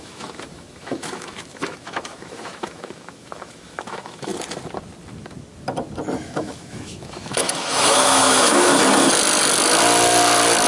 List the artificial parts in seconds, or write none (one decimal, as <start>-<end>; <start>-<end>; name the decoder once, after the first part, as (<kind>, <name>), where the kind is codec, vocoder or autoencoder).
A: 0.0-4.3 (autoencoder, DAC-VAE); 6.2-8.7